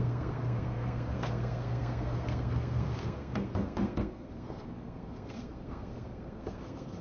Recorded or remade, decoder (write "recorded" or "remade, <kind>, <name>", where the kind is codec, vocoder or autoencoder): remade, codec, SNAC